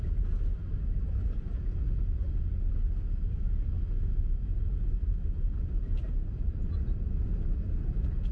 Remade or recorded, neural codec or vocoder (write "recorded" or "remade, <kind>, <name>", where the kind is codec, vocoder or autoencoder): recorded